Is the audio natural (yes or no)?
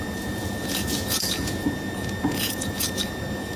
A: no